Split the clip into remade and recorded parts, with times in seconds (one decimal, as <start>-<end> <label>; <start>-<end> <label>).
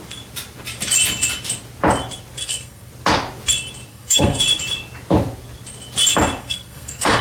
0.0-2.4 recorded; 2.4-2.9 remade; 2.9-3.9 recorded; 3.9-4.4 remade; 4.4-6.4 recorded; 6.4-7.2 remade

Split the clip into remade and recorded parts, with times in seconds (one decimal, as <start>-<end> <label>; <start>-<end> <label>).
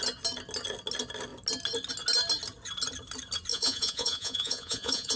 0.0-3.5 recorded; 3.5-5.2 remade